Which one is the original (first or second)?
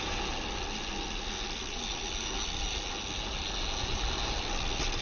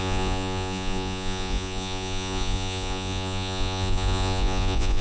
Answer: first